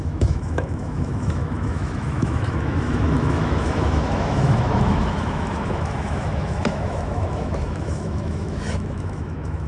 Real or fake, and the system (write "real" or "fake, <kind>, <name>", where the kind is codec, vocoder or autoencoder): fake, autoencoder, DAC-VAE